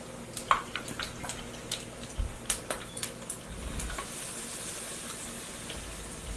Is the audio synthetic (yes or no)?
no